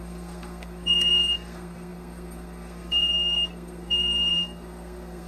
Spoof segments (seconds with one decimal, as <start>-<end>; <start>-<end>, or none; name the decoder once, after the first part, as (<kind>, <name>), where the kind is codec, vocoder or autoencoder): 0.0-5.3 (codec, SNAC)